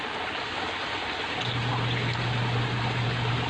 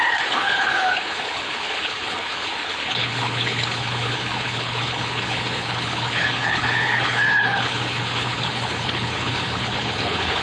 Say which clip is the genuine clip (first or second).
first